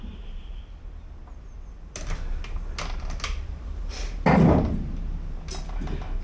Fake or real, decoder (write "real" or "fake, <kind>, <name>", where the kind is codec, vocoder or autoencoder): real